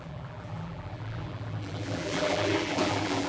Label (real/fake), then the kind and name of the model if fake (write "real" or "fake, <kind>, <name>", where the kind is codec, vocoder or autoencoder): fake, vocoder, BigVGAN v2